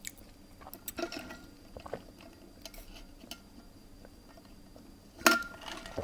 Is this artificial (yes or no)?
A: no